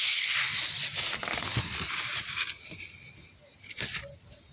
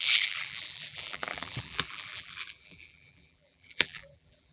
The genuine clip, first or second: first